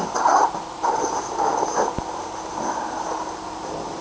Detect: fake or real real